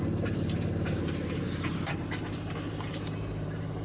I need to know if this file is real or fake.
fake